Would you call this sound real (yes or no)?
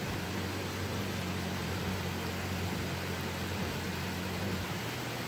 yes